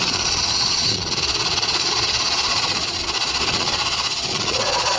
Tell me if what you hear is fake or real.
fake